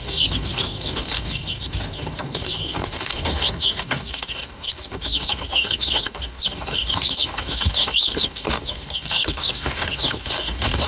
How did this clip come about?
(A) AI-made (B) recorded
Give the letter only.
A